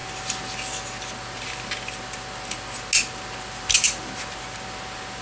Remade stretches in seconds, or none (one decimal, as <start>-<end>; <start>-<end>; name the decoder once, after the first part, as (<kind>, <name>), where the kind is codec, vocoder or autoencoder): none